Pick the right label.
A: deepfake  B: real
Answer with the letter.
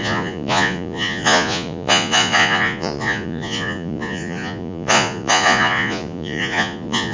A